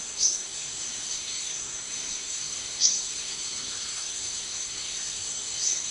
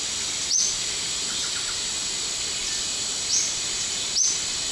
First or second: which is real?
second